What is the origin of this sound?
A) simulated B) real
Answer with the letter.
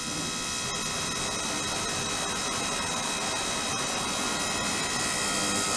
B